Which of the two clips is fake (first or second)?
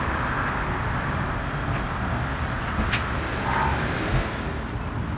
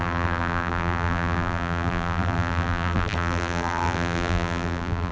second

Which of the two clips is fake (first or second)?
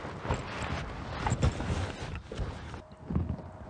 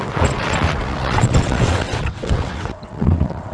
second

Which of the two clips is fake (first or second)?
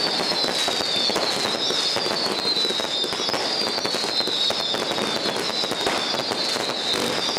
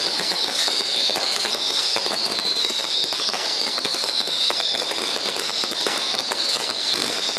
second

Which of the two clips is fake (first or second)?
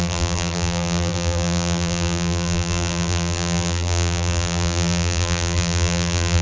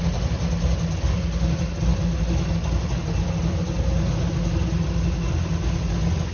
first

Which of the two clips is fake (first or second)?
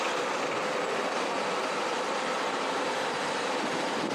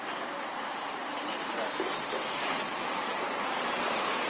first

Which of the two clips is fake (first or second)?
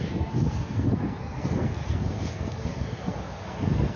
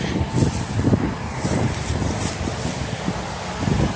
first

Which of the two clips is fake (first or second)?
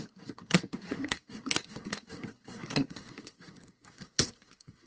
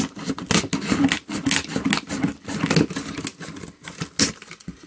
first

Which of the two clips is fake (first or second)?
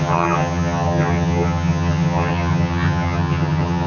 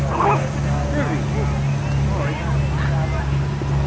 first